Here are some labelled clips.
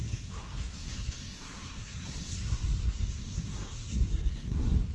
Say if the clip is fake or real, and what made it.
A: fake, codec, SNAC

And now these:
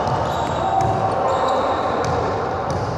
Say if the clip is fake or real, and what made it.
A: real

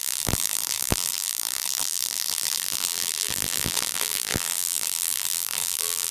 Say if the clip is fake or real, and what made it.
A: fake, vocoder, BigVGAN v2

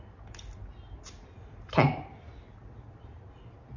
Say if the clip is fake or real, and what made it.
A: real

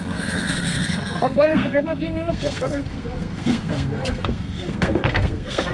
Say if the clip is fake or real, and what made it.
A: fake, codec, SNAC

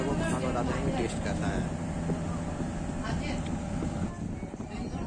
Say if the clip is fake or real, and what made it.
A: real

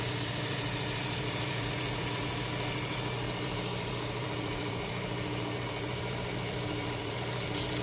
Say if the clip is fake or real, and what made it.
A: fake, vocoder, BigVGAN v2